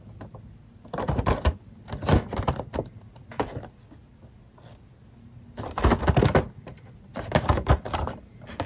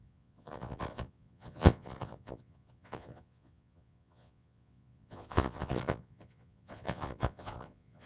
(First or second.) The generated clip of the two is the second